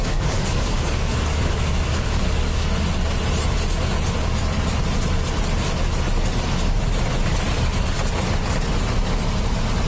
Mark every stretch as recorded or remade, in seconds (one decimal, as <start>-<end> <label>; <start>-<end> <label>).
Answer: 0.0-2.7 remade; 2.7-9.9 recorded